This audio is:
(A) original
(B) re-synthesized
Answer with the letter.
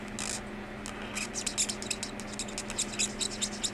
A